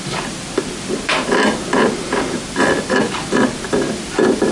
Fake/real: fake